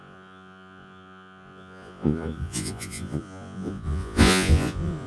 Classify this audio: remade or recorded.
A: remade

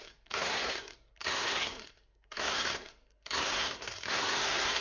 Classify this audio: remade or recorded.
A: remade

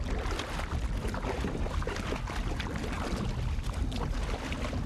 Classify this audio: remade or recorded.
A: recorded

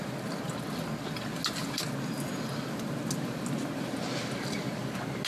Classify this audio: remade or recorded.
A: recorded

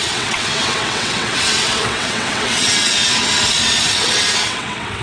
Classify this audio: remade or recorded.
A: remade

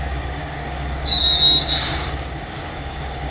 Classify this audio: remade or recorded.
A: remade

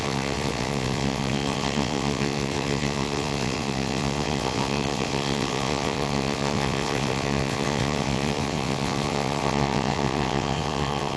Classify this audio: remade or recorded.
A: remade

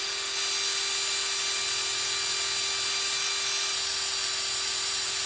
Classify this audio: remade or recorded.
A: recorded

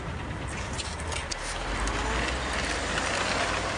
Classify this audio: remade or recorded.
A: recorded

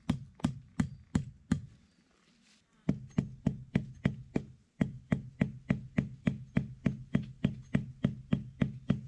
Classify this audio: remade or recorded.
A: recorded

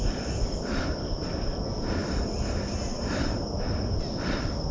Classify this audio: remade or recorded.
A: recorded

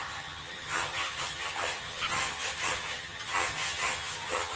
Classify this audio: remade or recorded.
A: remade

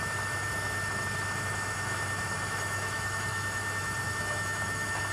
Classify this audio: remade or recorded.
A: remade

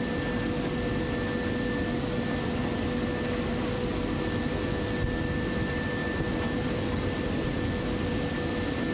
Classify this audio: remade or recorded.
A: recorded